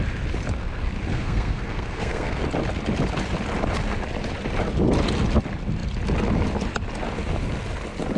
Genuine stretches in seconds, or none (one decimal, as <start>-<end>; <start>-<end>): 0.0-1.1; 2.4-8.2